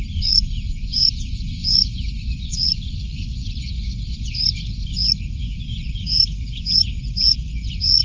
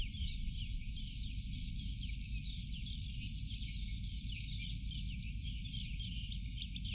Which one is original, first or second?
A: second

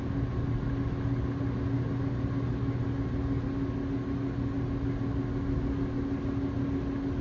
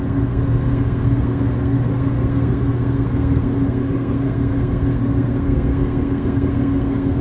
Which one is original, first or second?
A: first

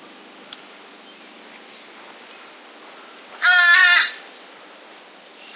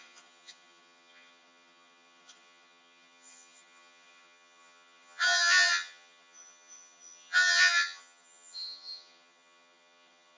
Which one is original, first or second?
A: first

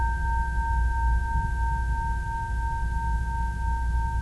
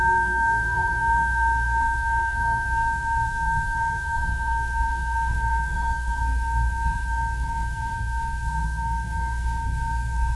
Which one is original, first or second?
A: first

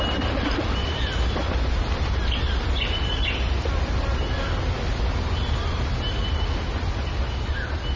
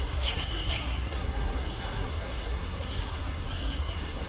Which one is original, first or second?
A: first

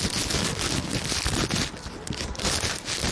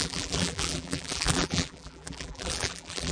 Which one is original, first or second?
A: first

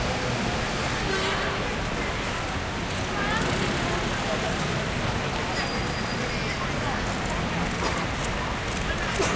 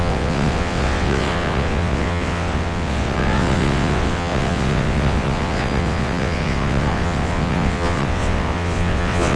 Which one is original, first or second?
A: first